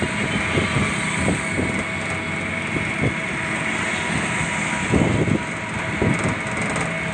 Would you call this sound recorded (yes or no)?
yes